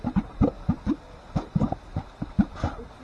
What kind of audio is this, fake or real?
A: real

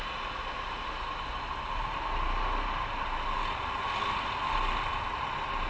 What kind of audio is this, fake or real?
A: real